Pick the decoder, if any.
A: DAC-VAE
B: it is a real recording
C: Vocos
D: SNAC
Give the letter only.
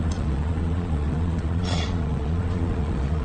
C